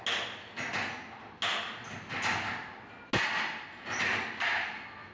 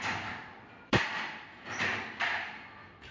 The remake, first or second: second